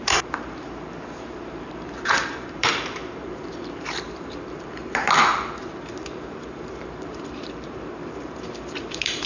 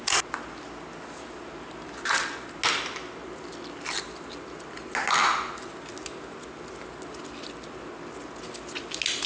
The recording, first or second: second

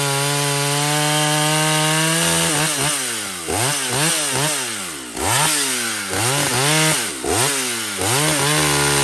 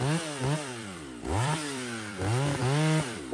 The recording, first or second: first